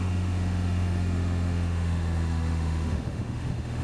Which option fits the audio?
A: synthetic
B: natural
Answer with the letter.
A